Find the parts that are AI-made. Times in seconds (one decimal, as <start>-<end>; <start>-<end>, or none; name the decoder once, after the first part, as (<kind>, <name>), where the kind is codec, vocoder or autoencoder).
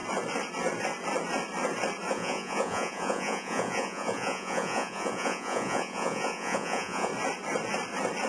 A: 2.1-7.1 (vocoder, Vocos)